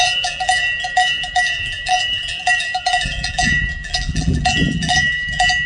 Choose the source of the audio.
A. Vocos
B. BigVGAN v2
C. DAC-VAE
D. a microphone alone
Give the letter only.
B